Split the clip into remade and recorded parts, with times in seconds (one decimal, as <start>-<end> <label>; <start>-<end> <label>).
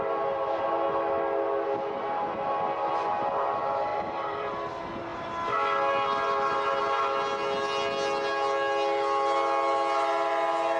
0.0-3.9 recorded; 3.9-4.5 remade; 4.5-10.8 recorded